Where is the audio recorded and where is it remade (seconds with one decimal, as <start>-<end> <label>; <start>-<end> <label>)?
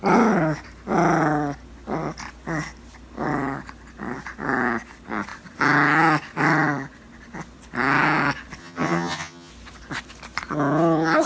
0.0-8.6 recorded; 8.6-9.5 remade; 9.5-11.3 recorded